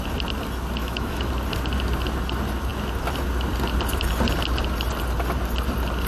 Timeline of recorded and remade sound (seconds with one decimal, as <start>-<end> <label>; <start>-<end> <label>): 0.0-0.8 recorded; 0.8-1.3 remade; 1.3-6.1 recorded